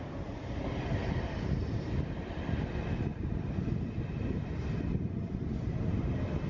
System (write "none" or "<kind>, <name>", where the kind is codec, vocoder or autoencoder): none